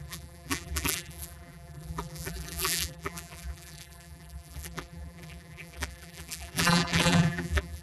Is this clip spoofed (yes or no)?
yes